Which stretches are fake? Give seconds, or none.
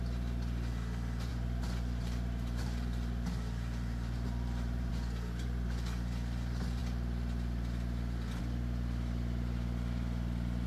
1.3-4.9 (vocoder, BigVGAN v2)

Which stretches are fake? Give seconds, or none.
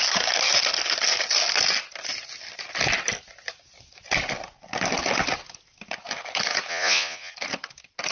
6.7-7.3 (vocoder, Vocos)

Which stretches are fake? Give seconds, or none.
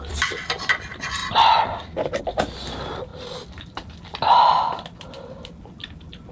none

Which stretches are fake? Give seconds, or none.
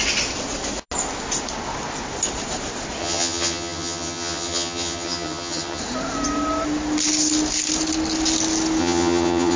3.0-5.8 (vocoder, HiFi-GAN); 8.8-9.6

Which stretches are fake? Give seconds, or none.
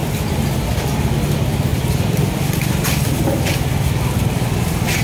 1.7-3.2 (vocoder, BigVGAN v2)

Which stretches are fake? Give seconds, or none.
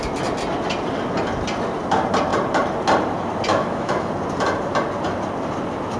3.5-4.1 (autoencoder, DAC-VAE)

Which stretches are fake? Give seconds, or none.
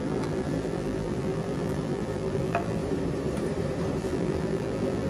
0.0-2.8 (vocoder, BigVGAN v2); 4.0-5.1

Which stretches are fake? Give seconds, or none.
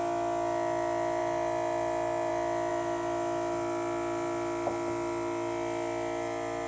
2.7-6.7 (vocoder, BigVGAN v2)